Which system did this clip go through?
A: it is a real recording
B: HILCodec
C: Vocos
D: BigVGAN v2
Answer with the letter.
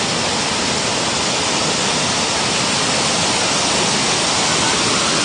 A